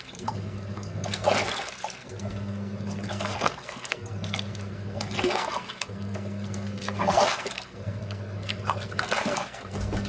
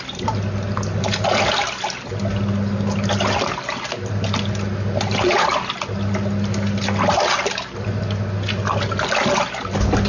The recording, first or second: second